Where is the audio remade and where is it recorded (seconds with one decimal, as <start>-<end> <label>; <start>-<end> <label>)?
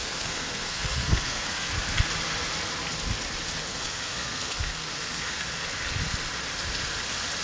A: 0.0-1.7 remade; 1.7-3.7 recorded; 3.7-5.5 remade; 5.5-7.4 recorded